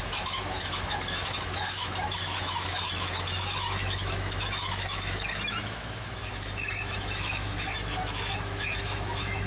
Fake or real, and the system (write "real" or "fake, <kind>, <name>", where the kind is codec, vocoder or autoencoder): fake, autoencoder, DAC-VAE